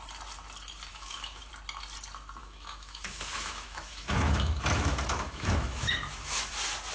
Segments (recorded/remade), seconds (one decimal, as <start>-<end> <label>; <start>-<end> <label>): 0.0-0.9 recorded; 0.9-1.5 remade; 1.5-2.4 recorded; 2.4-6.5 remade; 6.5-6.9 recorded